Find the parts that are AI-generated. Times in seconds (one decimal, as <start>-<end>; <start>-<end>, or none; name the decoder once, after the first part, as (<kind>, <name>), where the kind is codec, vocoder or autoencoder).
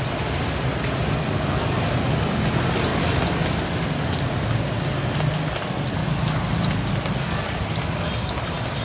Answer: 6.0-7.6 (vocoder, BigVGAN v2)